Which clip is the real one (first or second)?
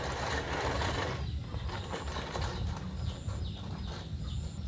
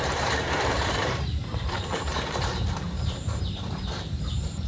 first